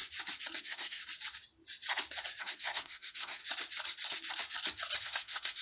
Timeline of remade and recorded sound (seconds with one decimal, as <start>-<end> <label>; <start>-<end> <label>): 0.0-0.6 recorded; 0.6-1.0 remade; 1.0-2.4 recorded; 2.4-3.4 remade; 3.4-5.0 recorded; 5.0-5.6 remade